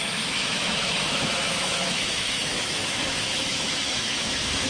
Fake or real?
fake